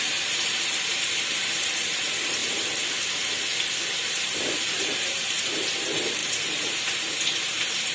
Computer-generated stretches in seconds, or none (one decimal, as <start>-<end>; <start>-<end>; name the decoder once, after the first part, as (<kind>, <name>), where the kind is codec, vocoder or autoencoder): 0.0-2.4 (vocoder, BigVGAN v2); 3.9-7.9